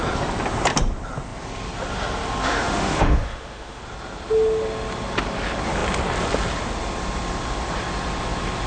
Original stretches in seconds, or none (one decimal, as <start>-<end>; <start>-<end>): 0.0-2.4; 3.8-8.7